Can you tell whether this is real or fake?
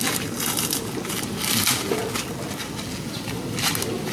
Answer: real